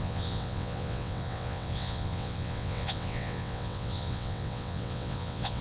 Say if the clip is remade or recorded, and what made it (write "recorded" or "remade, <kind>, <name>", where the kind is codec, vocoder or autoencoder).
remade, vocoder, WaveNeXt